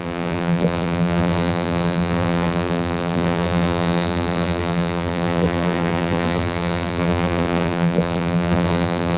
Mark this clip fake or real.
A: fake